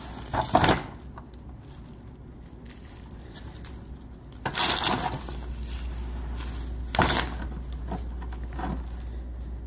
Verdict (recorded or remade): recorded